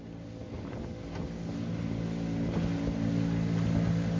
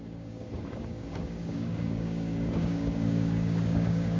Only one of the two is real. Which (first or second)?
first